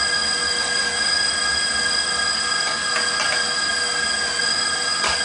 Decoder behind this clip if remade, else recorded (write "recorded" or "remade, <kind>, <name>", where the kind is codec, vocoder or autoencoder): recorded